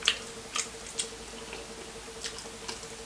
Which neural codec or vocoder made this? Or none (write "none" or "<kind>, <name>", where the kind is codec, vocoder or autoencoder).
none